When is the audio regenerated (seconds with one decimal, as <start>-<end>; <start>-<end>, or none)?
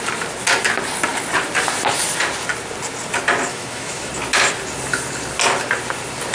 3.5-4.1